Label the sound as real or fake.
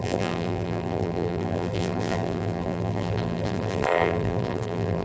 fake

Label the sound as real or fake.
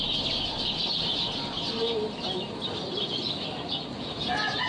real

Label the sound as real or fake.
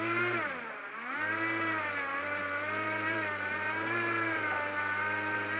fake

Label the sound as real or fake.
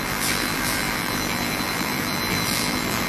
fake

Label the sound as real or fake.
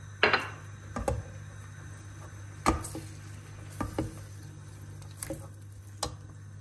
real